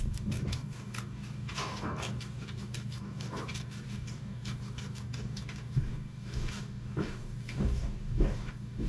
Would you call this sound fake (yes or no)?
yes